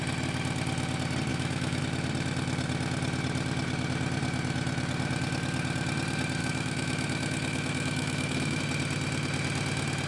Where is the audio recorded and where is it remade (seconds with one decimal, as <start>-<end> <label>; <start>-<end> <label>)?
0.0-1.3 recorded; 1.3-1.8 remade; 1.8-6.4 recorded; 6.4-8.6 remade; 8.6-10.1 recorded